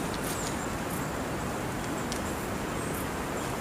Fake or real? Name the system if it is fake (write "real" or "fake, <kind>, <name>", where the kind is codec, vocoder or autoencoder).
real